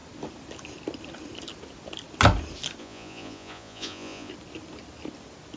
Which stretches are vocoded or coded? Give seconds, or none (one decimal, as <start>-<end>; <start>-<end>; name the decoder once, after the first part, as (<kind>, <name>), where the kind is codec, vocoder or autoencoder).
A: 2.8-4.3 (vocoder, Vocos)